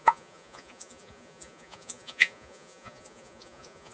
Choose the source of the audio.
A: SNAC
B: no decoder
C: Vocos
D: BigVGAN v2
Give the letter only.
C